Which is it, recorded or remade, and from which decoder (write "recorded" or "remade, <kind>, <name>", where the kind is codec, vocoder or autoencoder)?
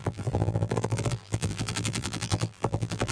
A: remade, vocoder, BigVGAN v2